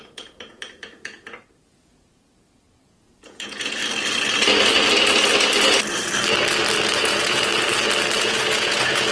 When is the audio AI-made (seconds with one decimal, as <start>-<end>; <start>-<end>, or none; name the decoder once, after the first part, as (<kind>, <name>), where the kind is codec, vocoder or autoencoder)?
0.0-3.8 (vocoder, Vocos); 7.0-7.5; 8.2-9.1